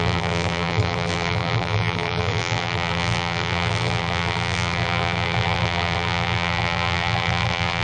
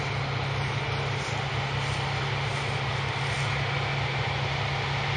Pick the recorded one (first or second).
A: second